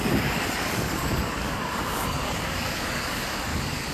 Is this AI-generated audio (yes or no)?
yes